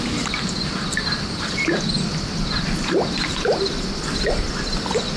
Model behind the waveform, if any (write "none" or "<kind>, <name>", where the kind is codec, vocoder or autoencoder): none